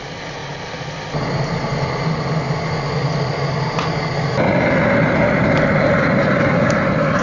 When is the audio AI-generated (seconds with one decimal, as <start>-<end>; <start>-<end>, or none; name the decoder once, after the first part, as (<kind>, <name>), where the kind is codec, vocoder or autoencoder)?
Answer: none